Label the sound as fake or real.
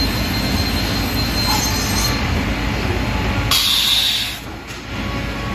real